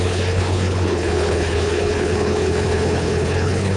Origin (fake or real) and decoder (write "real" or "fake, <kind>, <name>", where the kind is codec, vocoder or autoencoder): fake, codec, HILCodec